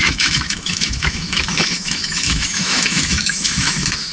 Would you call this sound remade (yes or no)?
yes